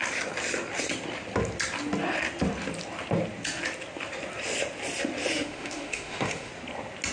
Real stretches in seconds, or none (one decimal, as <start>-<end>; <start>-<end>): 0.0-5.3; 6.5-7.1